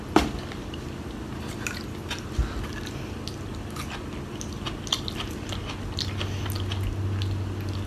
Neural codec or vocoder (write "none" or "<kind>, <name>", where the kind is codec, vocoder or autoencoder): none